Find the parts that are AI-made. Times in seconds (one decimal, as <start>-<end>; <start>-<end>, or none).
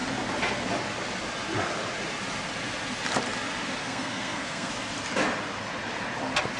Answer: 3.8-4.7